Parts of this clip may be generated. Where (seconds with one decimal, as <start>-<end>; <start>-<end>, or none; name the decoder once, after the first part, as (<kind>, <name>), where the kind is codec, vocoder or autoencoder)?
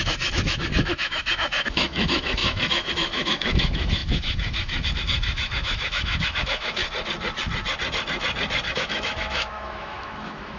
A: 0.0-6.8 (autoencoder, DAC-VAE); 8.7-10.6